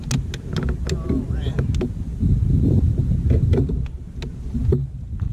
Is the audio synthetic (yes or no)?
no